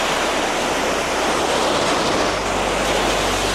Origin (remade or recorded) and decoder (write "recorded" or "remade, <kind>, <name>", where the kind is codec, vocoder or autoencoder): recorded